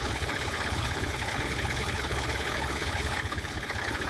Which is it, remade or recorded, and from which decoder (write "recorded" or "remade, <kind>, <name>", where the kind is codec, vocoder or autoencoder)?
remade, codec, HILCodec